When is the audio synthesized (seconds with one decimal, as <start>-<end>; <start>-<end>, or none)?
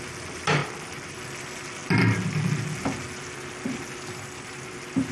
0.0-1.8